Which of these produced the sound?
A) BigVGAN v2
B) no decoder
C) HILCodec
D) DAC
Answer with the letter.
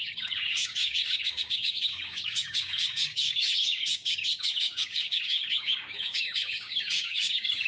D